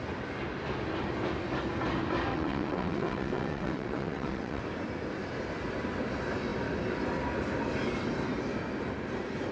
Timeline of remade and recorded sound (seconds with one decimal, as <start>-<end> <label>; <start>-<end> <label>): 0.0-2.3 recorded; 2.3-4.6 remade; 4.6-9.5 recorded